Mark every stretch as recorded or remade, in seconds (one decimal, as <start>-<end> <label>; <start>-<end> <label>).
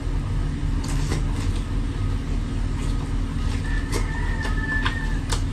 0.0-5.5 recorded